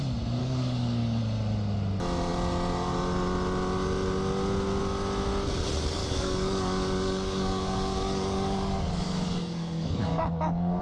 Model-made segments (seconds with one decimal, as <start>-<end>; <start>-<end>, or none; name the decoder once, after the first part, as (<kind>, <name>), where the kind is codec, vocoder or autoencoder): 0.4-1.2 (codec, DAC); 6.0-10.8